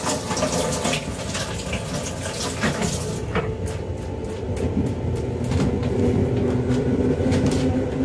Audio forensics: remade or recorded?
recorded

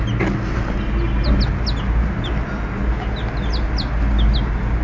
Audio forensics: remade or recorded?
recorded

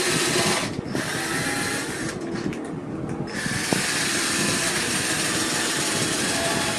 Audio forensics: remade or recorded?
recorded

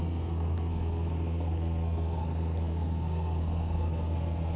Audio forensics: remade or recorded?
remade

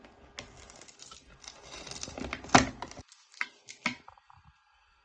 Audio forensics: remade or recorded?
recorded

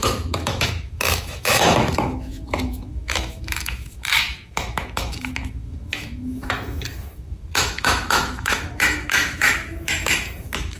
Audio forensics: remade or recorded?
remade